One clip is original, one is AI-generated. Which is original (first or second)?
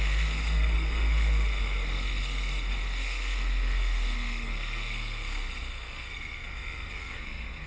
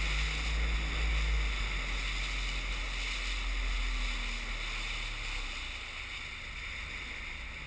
second